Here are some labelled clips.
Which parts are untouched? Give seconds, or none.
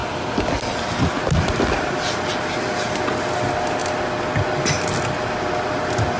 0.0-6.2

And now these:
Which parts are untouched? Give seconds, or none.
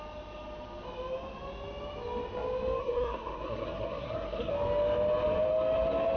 0.0-2.8; 4.5-6.2